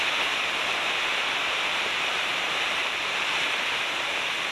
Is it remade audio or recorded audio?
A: remade